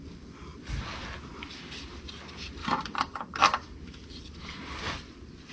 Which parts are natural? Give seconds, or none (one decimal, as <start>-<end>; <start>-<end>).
0.0-2.6; 4.8-5.5